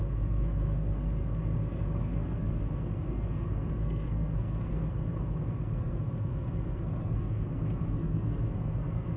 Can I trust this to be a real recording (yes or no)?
no